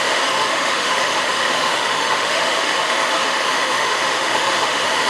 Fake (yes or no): yes